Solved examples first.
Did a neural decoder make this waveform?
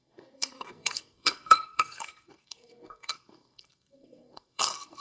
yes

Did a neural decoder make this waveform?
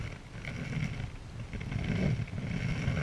no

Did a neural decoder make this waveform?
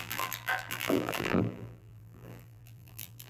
yes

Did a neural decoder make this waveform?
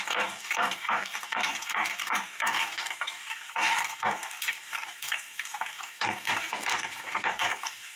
yes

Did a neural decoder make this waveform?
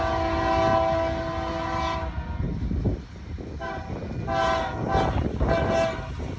no